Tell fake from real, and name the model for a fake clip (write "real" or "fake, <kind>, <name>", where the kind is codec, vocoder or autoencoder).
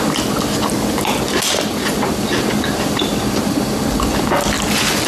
real